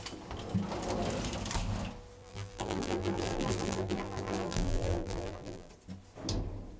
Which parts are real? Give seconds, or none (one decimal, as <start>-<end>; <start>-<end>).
0.0-2.2; 5.7-6.8